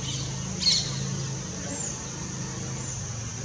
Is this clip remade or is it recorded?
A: recorded